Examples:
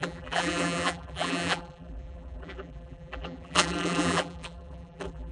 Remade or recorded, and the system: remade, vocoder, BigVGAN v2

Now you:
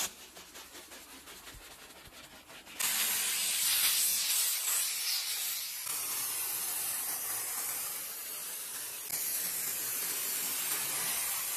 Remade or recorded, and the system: recorded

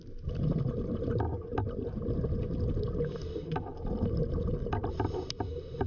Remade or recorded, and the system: recorded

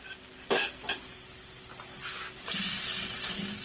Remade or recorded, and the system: recorded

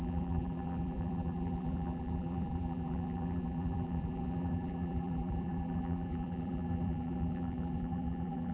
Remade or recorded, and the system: remade, vocoder, BigVGAN v2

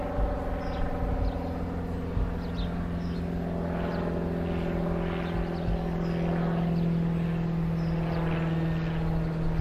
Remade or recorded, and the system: recorded